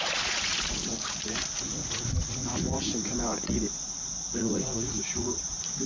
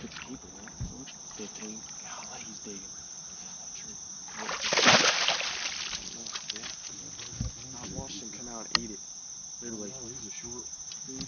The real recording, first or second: second